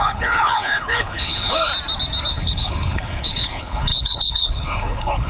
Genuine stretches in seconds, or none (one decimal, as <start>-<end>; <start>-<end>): 1.7-2.3